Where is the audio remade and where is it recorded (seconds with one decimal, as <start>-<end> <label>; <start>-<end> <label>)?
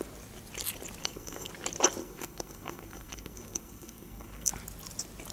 0.0-1.0 recorded; 1.0-1.5 remade; 1.5-2.0 recorded; 2.0-4.5 remade; 4.5-5.3 recorded